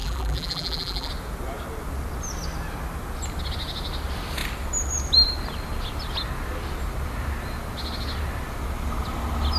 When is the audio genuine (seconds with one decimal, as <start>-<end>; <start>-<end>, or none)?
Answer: 1.1-9.6